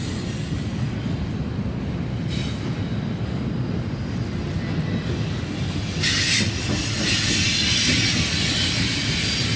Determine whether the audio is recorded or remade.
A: recorded